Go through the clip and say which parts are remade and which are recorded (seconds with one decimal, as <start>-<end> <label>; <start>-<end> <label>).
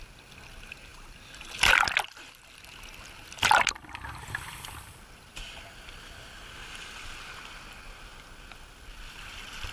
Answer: 0.0-9.7 recorded